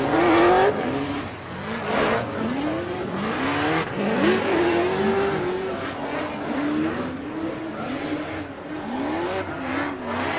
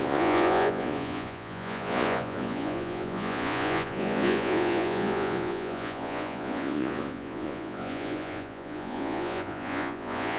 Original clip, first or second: first